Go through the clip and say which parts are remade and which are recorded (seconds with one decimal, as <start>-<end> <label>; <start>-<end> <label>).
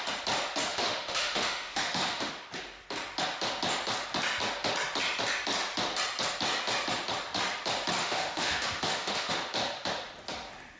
0.0-0.7 recorded; 0.7-2.3 remade; 2.3-8.0 recorded; 8.0-9.3 remade; 9.3-10.8 recorded